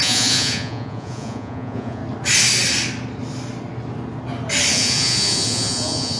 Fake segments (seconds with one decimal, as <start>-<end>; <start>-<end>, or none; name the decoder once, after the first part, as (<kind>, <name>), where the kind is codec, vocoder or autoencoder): 0.0-2.0 (vocoder, Vocos); 4.7-6.2